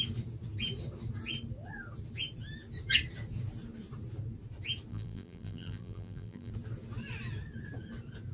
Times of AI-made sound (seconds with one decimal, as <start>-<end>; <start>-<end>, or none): 4.9-6.5

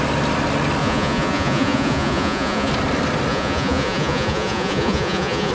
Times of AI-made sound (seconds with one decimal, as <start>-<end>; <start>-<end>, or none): 0.8-2.7; 3.3-5.5

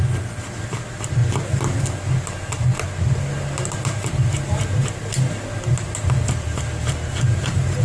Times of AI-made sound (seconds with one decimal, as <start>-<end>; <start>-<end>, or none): none

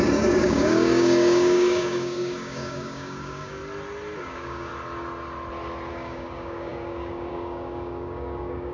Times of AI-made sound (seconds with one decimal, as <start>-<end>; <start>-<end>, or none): 0.0-3.6; 4.2-4.7; 5.9-8.7